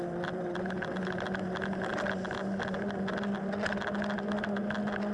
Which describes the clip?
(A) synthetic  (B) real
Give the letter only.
B